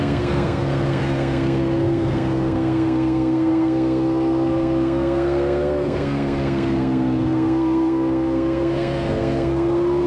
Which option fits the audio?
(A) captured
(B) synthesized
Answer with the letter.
B